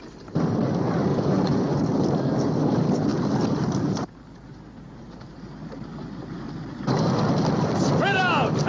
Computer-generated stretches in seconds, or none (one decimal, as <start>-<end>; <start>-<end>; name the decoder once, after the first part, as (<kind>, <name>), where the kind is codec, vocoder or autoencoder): 1.1-1.8 (vocoder, Vocos)